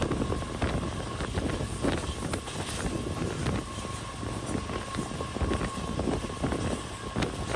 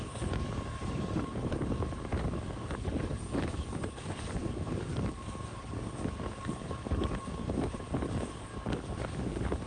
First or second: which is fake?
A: second